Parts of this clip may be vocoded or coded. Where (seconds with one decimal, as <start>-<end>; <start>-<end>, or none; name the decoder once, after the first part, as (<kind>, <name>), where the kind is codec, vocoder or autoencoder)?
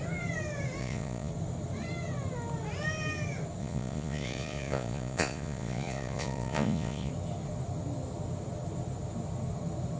0.8-1.3 (vocoder, Vocos); 3.6-7.1